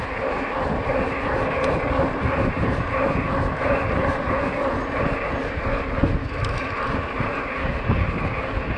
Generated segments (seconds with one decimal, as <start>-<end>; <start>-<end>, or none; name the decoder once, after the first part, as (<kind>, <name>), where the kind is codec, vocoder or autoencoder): 6.2-6.8 (autoencoder, DAC-VAE)